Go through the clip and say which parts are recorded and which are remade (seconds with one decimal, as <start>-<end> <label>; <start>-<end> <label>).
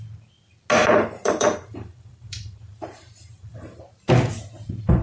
0.0-0.8 recorded; 0.8-3.8 remade; 3.8-5.0 recorded